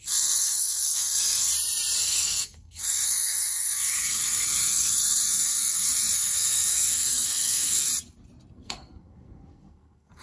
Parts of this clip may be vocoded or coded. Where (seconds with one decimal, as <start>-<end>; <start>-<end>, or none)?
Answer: 0.0-1.5; 2.0-7.9; 8.5-10.2

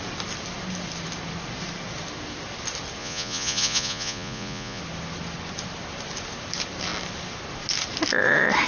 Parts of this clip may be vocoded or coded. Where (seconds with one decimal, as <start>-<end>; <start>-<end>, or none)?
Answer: 3.0-4.8

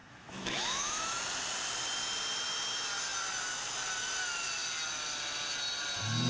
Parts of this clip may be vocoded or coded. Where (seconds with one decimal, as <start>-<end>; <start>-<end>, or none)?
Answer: 0.0-1.2

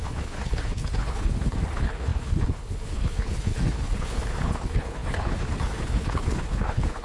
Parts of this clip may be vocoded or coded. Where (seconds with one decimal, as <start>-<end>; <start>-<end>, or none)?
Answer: 0.0-7.0

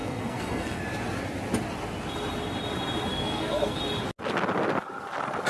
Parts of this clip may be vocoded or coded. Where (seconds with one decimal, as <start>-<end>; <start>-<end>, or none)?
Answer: 0.0-0.8; 3.1-3.8